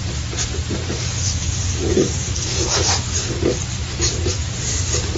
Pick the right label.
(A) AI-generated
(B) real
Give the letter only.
B